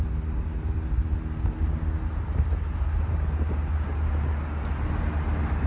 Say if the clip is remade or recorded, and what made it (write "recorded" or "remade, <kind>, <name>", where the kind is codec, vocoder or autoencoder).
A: recorded